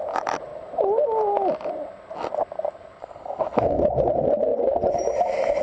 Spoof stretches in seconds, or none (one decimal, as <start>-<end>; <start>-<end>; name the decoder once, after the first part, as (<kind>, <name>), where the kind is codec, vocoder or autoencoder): 3.0-3.8 (codec, SNAC)